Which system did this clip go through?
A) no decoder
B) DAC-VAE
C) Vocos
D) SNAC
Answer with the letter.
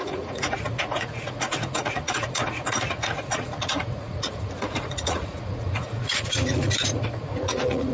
C